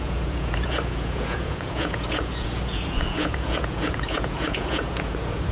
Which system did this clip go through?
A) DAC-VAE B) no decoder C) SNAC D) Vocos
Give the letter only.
D